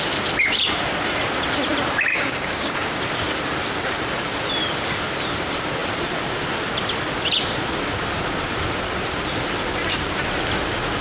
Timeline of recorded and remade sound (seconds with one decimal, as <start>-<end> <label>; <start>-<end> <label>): 0.0-2.1 recorded; 2.1-3.0 remade; 3.0-11.0 recorded